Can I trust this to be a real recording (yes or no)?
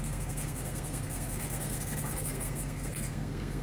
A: no